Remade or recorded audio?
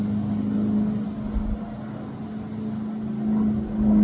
recorded